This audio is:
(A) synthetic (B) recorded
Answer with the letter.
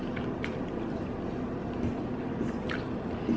B